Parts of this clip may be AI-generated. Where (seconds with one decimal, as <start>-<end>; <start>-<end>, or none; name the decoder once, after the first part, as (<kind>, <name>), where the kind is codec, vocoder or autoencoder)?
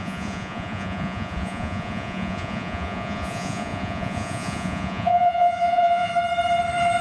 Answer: 0.0-6.1 (vocoder, Vocos)